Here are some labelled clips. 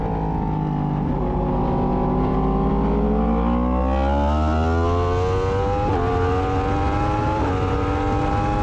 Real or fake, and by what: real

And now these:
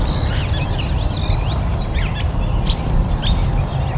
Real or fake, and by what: fake, vocoder, BigVGAN v2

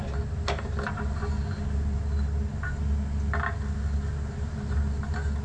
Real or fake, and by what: real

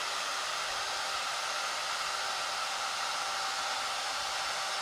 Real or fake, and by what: real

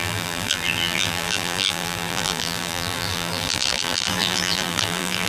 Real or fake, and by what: fake, vocoder, BigVGAN v2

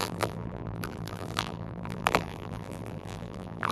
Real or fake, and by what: fake, vocoder, BigVGAN v2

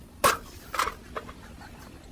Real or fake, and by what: real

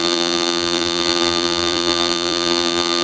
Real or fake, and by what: fake, vocoder, BigVGAN v2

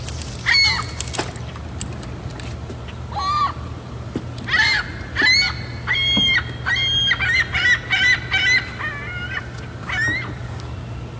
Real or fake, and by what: real